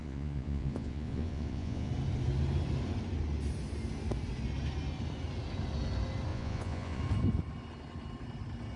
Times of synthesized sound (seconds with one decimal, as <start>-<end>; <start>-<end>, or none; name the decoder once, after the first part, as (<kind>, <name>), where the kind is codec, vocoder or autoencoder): 0.0-1.9 (vocoder, Vocos); 6.3-7.0